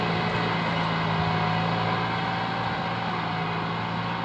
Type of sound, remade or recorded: recorded